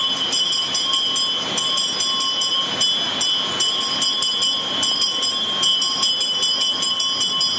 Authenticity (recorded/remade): recorded